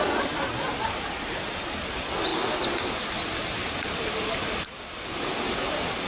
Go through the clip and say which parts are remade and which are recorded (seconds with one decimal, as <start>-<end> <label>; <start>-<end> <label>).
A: 0.0-6.1 recorded